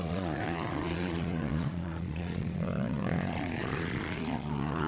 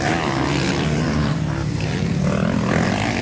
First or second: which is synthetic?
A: first